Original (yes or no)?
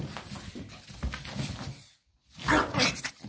yes